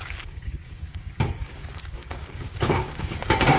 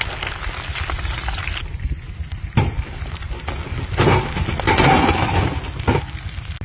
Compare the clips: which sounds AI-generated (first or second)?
first